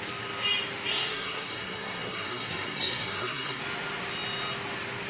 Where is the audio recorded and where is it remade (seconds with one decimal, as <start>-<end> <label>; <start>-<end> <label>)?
0.0-0.9 recorded; 0.9-3.6 remade; 3.6-5.1 recorded